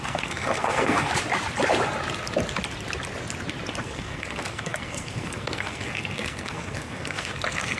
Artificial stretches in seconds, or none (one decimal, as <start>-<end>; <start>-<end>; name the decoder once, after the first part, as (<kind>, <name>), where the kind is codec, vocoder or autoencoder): 0.0-1.1 (codec, SNAC); 3.8-7.8